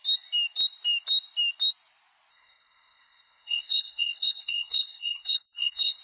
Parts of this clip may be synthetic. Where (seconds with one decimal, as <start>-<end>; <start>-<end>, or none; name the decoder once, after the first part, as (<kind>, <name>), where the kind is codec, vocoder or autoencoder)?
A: 2.3-6.0 (codec, SNAC)